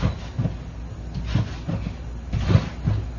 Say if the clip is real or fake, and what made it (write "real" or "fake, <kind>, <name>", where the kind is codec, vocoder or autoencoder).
real